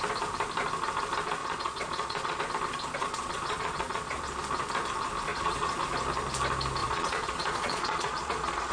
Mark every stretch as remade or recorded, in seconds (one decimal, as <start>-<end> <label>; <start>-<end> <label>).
0.0-1.4 recorded; 1.4-2.4 remade; 2.4-3.0 recorded; 3.0-4.1 remade; 4.1-5.3 recorded; 5.3-5.8 remade; 5.8-6.8 recorded; 6.8-8.7 remade